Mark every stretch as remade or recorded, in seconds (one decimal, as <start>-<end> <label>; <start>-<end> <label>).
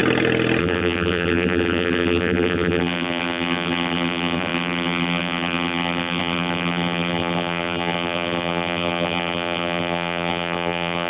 0.0-0.6 recorded; 0.6-11.1 remade